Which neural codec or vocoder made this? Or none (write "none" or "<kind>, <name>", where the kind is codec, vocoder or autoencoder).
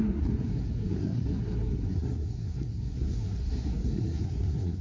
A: codec, SNAC